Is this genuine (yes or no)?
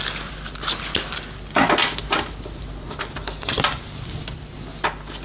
yes